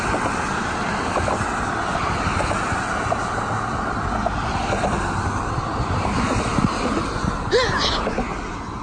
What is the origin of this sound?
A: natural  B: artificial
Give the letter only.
A